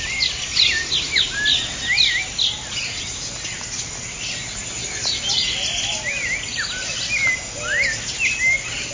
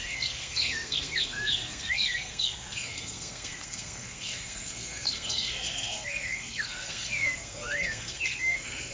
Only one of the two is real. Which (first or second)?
first